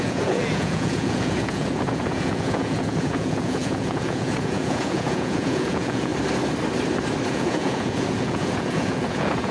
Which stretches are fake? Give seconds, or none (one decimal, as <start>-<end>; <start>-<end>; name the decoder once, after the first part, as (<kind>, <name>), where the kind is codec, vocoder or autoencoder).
0.0-6.1 (vocoder, Vocos); 7.3-9.5